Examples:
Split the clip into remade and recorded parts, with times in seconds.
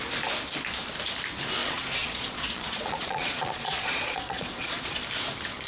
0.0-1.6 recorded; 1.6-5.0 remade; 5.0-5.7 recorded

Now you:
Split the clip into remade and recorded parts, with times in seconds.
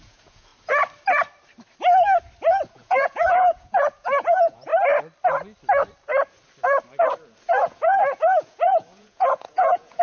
0.0-0.5 remade; 0.5-2.7 recorded; 2.7-4.7 remade; 4.7-7.5 recorded; 7.5-10.0 remade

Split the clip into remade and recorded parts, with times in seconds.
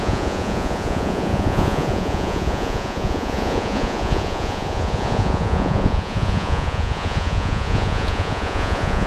0.0-9.1 remade